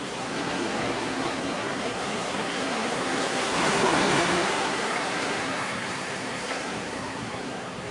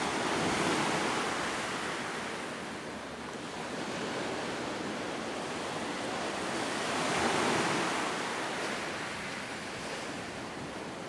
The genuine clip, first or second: second